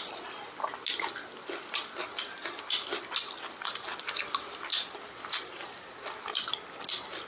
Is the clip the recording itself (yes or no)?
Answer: yes